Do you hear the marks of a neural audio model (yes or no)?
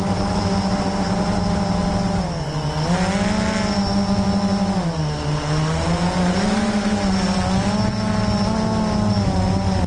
no